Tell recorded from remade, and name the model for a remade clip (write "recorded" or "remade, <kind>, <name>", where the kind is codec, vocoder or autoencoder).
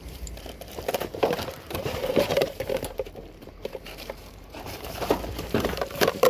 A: remade, vocoder, BigVGAN v2